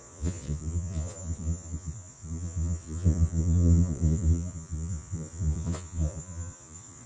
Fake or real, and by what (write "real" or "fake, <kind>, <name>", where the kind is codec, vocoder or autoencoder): fake, vocoder, Vocos